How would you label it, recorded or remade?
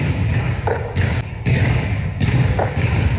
remade